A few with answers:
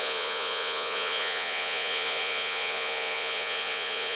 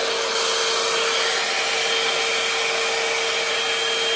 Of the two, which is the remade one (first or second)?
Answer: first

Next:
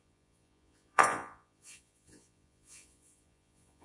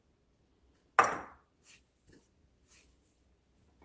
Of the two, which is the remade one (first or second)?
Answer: first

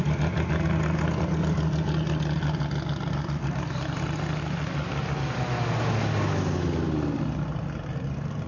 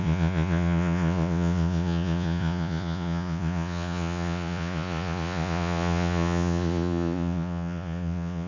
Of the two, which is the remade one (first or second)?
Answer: second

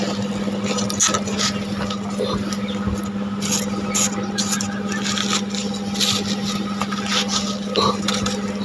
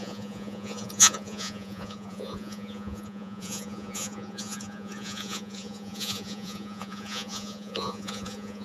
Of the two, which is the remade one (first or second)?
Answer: second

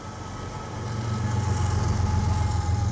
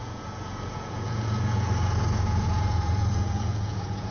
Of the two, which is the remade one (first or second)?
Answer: second